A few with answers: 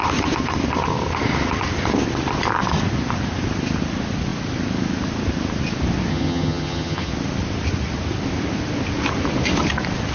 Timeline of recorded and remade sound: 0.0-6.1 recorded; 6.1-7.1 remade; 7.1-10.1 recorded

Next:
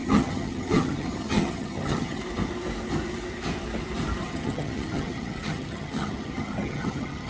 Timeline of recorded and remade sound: 0.0-2.2 remade; 2.2-4.2 recorded; 4.2-7.3 remade

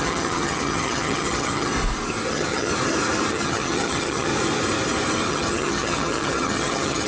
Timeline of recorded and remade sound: 0.0-1.7 remade; 1.7-2.3 recorded; 2.3-2.7 remade; 2.7-3.3 recorded; 3.3-4.3 remade; 4.3-5.3 recorded; 5.3-7.1 remade

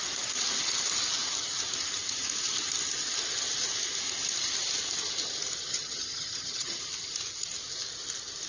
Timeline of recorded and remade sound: 0.0-5.7 recorded; 5.7-6.8 remade; 6.8-8.5 recorded

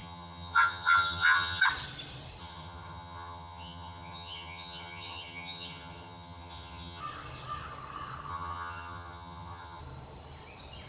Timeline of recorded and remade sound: 0.0-1.6 remade; 1.6-2.4 recorded; 2.4-7.0 remade; 7.0-8.3 recorded; 8.3-9.8 remade; 9.8-10.9 recorded

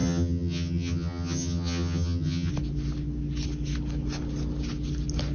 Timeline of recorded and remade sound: 0.0-2.5 remade; 2.5-5.3 recorded